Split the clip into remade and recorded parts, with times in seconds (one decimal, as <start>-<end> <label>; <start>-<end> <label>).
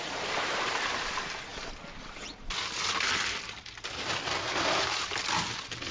0.0-5.9 recorded